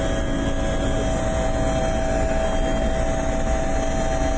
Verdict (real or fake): real